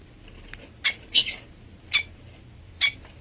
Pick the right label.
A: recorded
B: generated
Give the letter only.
A